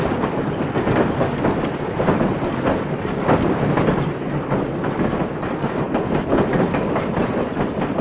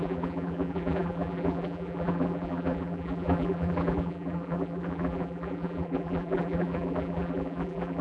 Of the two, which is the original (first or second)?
first